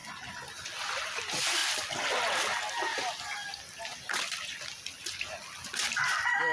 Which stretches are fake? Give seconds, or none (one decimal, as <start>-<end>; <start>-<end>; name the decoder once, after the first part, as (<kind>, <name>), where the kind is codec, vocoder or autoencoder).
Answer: none